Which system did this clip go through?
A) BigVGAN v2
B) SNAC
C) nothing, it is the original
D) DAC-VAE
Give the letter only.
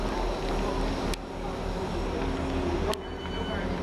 C